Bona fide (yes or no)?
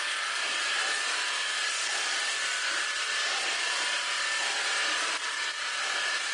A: yes